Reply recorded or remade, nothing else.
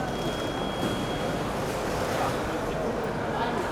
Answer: recorded